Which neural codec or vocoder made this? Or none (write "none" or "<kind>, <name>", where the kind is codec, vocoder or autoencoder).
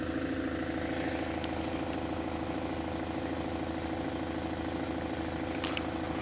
none